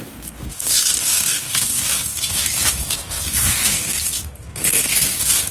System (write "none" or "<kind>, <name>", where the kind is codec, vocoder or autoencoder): codec, DAC